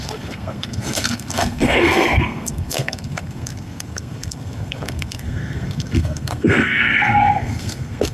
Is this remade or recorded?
remade